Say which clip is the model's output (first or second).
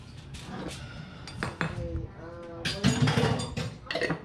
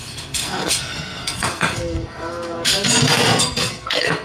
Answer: second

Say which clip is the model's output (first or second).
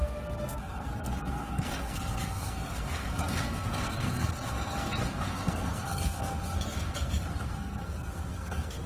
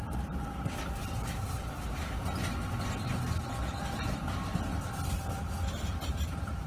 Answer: first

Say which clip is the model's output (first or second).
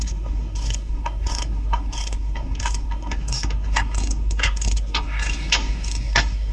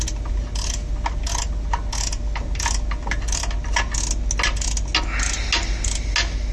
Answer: first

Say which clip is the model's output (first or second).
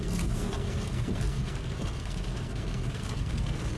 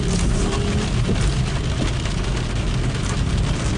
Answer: first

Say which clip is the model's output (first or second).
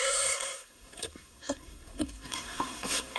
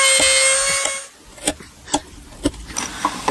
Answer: first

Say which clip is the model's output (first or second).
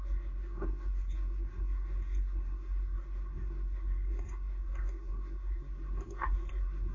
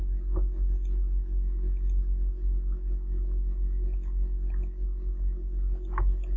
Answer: first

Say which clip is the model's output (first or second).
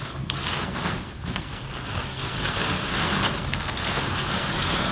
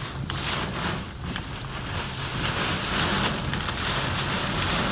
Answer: first